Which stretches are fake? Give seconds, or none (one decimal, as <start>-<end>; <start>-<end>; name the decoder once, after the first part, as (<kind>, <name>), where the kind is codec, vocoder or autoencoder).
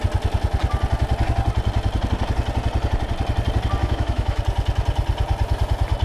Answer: 3.8-4.4 (autoencoder, DAC-VAE)